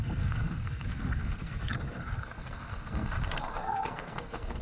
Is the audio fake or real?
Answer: fake